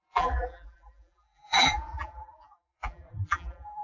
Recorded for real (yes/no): no